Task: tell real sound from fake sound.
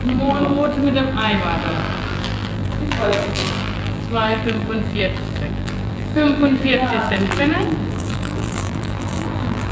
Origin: fake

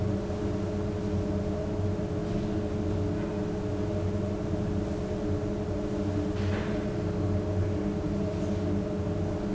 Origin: real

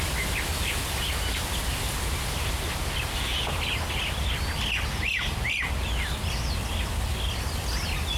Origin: real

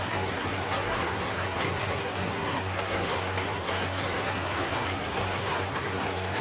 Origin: fake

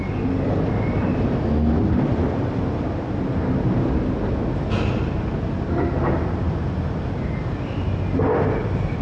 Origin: real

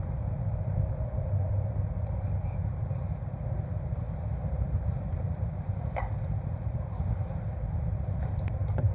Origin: fake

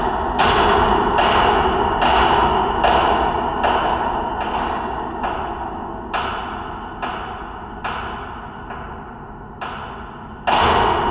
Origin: real